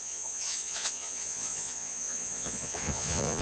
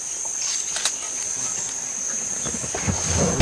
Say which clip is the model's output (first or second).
first